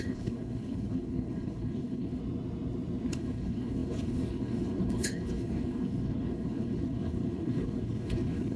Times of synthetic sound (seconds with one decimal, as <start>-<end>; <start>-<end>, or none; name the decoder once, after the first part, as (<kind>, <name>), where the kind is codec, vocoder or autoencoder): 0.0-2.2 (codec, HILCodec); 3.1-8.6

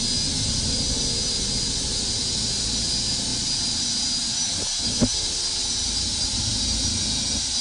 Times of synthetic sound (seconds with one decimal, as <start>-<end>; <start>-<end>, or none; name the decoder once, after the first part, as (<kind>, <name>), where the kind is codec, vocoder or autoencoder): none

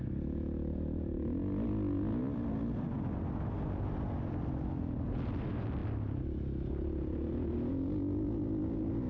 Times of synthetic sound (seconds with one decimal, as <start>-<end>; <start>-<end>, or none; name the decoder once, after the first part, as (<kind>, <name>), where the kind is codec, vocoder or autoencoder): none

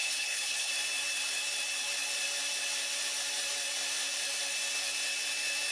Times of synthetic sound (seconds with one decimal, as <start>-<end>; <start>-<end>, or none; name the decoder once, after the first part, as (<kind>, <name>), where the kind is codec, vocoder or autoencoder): 0.0-0.7 (codec, HILCodec)